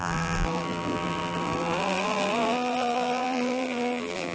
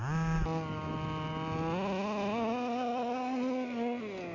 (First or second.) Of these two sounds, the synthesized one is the first